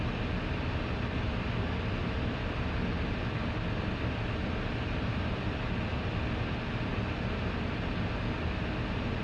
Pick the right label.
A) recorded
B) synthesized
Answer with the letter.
A